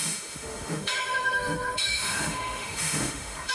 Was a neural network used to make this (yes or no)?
yes